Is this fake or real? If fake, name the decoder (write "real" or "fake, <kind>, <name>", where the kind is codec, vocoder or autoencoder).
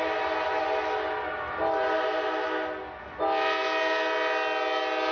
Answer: real